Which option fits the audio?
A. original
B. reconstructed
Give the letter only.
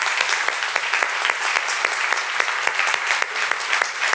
A